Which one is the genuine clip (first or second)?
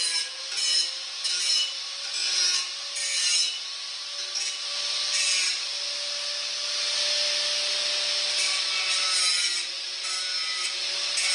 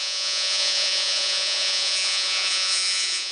first